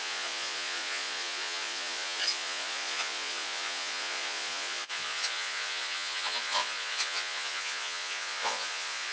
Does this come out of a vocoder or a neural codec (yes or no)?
yes